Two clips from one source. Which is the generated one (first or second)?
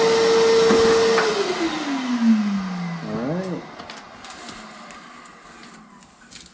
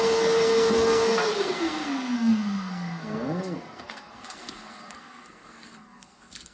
second